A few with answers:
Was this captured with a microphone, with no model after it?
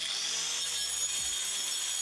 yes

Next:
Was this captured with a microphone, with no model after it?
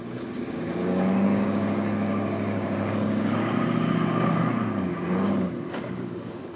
no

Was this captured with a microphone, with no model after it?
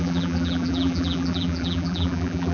no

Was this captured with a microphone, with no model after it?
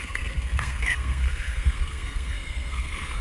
no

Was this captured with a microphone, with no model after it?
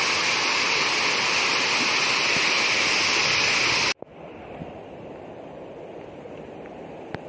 yes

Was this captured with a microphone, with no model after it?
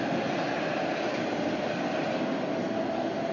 yes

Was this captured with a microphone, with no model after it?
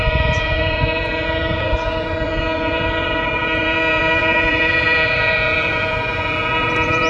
no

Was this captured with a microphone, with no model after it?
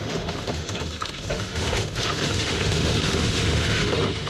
no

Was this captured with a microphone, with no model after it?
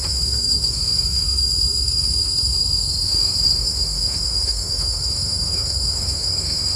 no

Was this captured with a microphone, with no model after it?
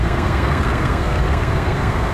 no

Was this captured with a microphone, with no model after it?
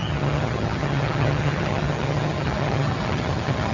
no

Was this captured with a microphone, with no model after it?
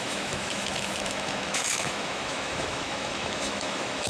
no